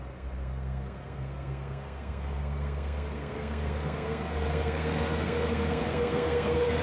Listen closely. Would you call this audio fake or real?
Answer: fake